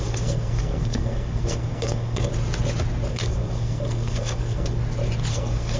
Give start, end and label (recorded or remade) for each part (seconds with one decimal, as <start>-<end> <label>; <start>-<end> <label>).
0.0-2.3 remade; 2.3-3.1 recorded; 3.1-4.8 remade; 4.8-5.3 recorded; 5.3-5.8 remade